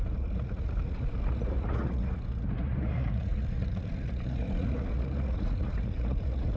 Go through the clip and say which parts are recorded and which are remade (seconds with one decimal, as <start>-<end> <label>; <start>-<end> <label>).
0.0-6.6 remade